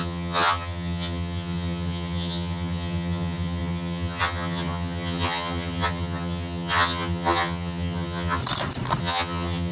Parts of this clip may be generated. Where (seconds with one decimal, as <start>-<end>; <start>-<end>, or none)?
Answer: 0.0-8.4; 9.0-9.7